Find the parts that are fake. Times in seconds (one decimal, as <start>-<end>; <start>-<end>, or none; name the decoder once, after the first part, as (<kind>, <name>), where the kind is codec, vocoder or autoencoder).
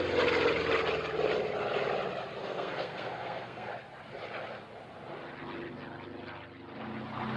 2.4-3.7 (codec, SNAC)